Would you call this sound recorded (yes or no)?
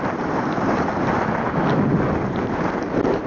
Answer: yes